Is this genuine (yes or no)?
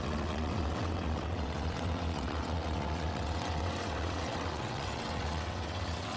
no